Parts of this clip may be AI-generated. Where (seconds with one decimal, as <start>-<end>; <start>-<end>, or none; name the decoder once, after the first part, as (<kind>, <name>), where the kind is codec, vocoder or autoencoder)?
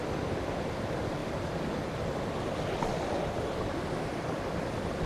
0.0-1.2 (vocoder, BigVGAN v2); 3.9-5.1